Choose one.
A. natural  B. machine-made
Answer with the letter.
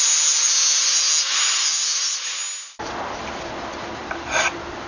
A